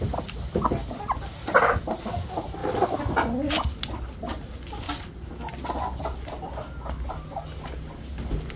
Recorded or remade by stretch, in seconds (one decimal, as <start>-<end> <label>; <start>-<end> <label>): 0.0-8.6 recorded